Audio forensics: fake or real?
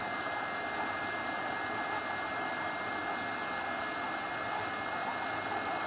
real